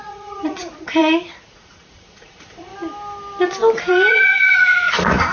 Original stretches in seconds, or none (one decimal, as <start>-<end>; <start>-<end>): 1.0-1.5; 2.7-4.1